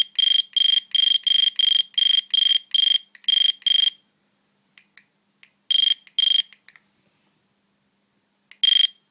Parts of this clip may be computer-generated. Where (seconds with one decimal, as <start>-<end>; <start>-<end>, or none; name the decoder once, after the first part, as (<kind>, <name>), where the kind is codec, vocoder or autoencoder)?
none